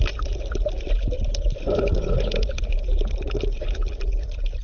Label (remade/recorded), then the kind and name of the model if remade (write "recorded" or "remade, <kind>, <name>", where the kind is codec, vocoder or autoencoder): recorded